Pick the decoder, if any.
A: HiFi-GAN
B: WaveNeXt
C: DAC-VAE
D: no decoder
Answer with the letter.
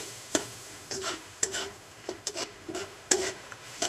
C